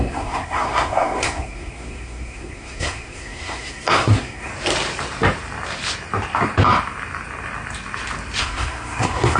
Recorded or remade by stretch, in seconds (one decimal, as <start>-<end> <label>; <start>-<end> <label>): 0.0-4.5 remade; 4.5-8.4 recorded; 8.4-9.4 remade

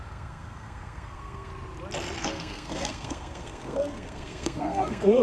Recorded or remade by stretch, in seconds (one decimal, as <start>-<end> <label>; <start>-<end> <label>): 0.0-1.5 remade; 1.5-2.2 recorded; 2.2-5.2 remade

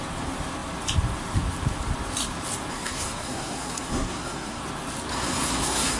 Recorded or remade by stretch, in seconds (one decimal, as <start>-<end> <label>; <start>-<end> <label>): 0.0-2.7 recorded; 2.7-4.6 remade; 4.6-5.1 recorded; 5.1-6.0 remade

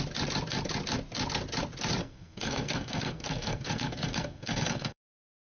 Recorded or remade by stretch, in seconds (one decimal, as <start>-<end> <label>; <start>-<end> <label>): 0.0-2.0 recorded; 2.0-5.4 remade

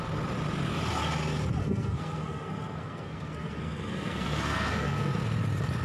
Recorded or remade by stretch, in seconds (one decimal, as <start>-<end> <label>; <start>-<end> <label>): 0.0-1.6 recorded; 1.6-5.1 remade; 5.1-5.8 recorded